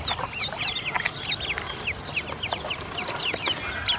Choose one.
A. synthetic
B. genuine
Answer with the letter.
B